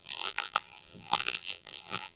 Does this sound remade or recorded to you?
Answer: remade